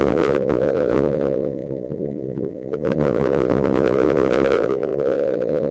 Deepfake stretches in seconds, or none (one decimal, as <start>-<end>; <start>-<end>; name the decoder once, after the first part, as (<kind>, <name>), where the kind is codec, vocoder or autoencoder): 0.0-5.7 (vocoder, Vocos)